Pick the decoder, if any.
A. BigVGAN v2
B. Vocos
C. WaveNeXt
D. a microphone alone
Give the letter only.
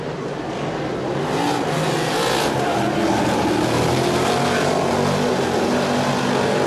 D